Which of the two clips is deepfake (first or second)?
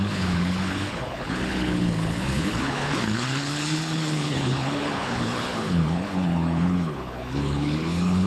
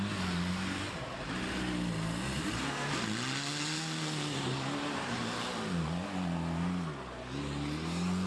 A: first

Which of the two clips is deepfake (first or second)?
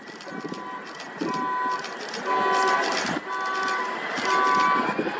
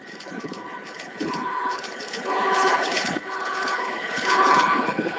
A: second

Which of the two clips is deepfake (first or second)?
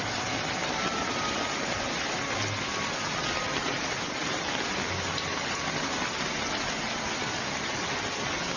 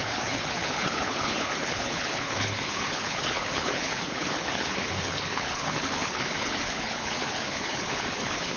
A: second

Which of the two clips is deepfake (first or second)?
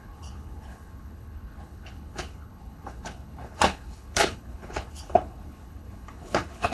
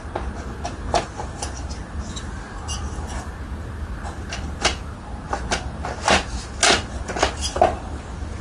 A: first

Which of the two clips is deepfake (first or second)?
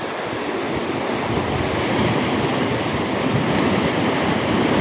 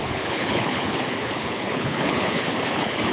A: second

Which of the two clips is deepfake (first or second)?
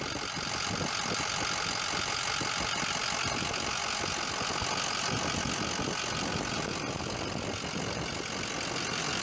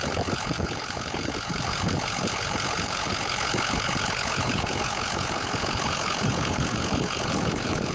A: second